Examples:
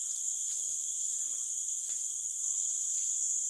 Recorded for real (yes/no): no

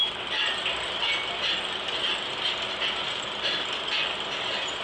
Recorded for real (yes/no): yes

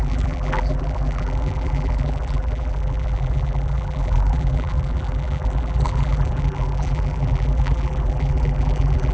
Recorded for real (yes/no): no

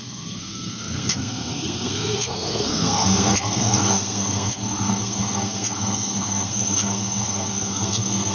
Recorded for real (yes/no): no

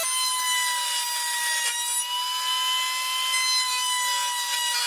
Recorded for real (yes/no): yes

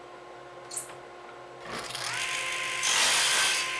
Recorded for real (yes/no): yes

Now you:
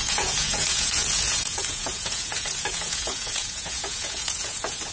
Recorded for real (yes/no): no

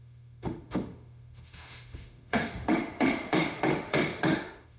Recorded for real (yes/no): no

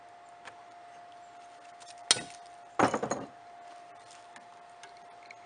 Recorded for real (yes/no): yes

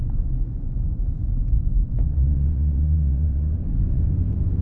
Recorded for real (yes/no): no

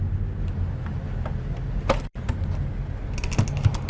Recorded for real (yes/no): yes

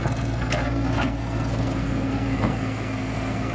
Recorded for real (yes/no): no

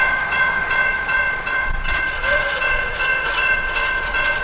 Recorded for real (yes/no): no